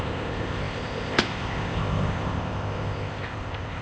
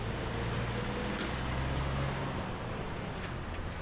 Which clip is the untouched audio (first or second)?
second